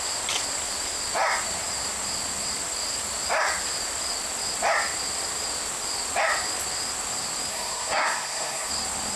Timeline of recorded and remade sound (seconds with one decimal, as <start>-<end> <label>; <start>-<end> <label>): 0.0-7.5 recorded; 7.5-8.7 remade; 8.7-9.2 recorded